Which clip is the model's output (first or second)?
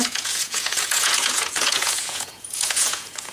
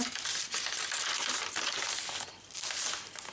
first